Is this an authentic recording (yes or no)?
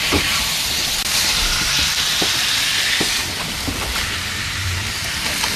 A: no